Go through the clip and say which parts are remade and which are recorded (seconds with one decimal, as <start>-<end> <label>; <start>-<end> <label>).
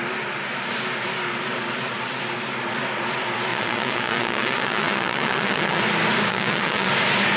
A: 0.0-3.5 recorded; 3.5-5.8 remade; 5.8-6.3 recorded; 6.3-6.9 remade; 6.9-7.4 recorded